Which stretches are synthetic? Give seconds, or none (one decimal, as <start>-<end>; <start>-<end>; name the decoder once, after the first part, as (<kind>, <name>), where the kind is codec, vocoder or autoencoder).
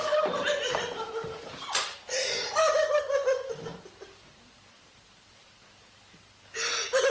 0.0-1.5 (vocoder, BigVGAN v2)